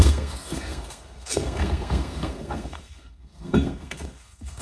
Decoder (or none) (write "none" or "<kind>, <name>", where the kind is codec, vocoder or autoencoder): codec, SNAC